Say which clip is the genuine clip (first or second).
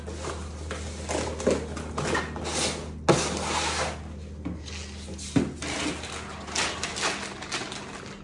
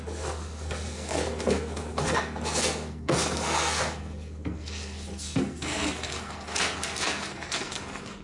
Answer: first